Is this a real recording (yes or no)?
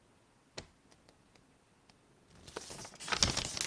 yes